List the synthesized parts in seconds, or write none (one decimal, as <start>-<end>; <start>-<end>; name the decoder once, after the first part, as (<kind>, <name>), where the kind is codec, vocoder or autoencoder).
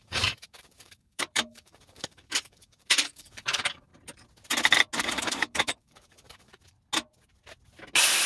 0.0-3.9 (codec, DAC); 5.0-6.6